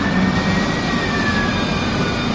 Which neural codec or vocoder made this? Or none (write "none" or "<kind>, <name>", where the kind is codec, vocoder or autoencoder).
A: none